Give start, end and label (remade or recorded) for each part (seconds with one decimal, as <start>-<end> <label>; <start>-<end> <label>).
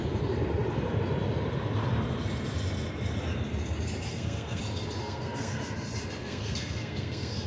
0.0-4.1 recorded; 4.1-4.6 remade; 4.6-5.0 recorded; 5.0-5.6 remade; 5.6-6.2 recorded; 6.2-7.5 remade